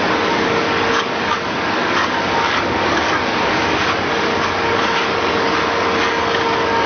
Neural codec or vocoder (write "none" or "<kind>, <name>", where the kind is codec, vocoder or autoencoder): codec, DAC